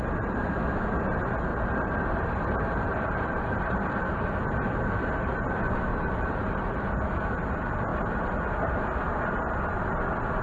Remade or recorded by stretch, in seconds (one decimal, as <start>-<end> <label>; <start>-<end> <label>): 0.0-1.5 recorded; 1.5-4.4 remade; 4.4-5.9 recorded; 5.9-6.9 remade; 6.9-10.4 recorded